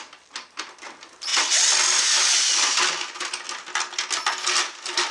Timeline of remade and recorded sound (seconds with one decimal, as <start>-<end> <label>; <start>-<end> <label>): 0.0-5.1 recorded